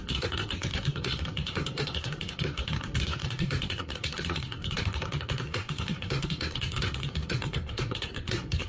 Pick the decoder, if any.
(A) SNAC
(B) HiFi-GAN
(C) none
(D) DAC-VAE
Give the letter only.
A